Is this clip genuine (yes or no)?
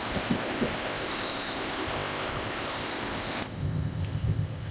no